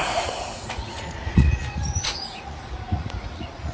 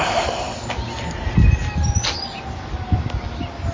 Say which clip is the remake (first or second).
first